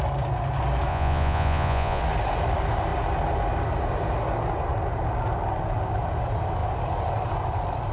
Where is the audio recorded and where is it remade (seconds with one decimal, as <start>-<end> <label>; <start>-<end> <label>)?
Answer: 0.0-0.9 recorded; 0.9-2.0 remade; 2.0-7.9 recorded